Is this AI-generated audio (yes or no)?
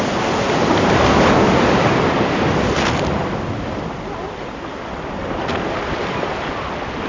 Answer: no